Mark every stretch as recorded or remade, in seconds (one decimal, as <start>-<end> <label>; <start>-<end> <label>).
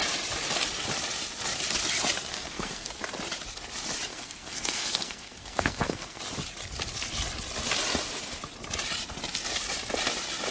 0.0-2.3 recorded; 2.3-2.9 remade; 2.9-4.1 recorded; 4.1-6.2 remade; 6.2-10.5 recorded